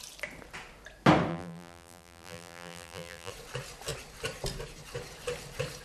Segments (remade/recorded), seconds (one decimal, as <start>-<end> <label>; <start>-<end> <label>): 0.0-1.3 recorded; 1.3-3.3 remade; 3.3-5.8 recorded